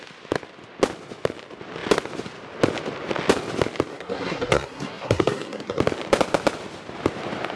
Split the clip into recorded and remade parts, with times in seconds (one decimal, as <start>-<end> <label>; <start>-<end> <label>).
0.0-3.9 recorded; 3.9-5.8 remade; 5.8-7.6 recorded